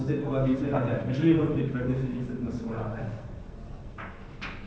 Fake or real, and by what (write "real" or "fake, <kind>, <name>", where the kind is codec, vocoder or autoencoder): fake, codec, SNAC